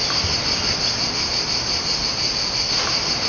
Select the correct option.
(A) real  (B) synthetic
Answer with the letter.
A